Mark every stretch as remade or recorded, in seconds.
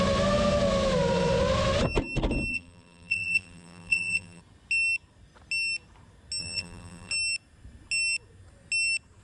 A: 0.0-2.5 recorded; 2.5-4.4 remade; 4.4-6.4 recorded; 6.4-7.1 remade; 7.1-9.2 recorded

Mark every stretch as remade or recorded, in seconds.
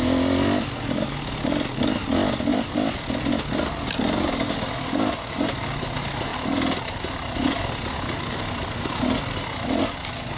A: 0.0-10.4 recorded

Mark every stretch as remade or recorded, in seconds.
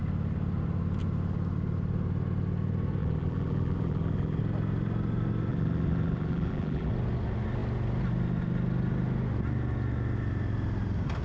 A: 0.0-3.0 recorded; 3.0-4.4 remade; 4.4-5.5 recorded; 5.5-6.9 remade; 6.9-11.2 recorded